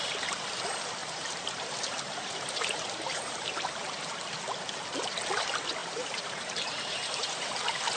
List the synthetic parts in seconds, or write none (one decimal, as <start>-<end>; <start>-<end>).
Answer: 1.0-4.2; 5.8-8.0